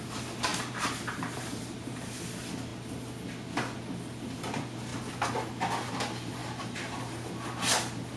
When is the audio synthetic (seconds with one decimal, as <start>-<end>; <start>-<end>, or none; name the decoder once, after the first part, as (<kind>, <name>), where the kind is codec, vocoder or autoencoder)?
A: 0.5-2.3 (vocoder, BigVGAN v2); 6.4-7.3